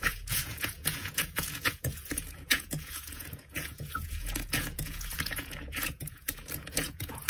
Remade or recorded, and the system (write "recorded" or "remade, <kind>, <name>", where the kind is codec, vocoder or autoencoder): remade, vocoder, Vocos